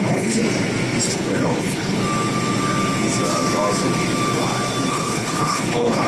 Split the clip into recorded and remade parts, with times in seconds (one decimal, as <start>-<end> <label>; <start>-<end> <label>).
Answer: 0.0-0.4 remade; 0.4-1.1 recorded; 1.1-2.0 remade; 2.0-4.9 recorded; 4.9-6.1 remade